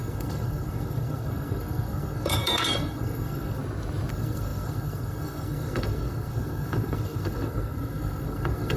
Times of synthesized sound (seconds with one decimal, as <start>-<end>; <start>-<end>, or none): 0.0-3.6; 4.1-8.8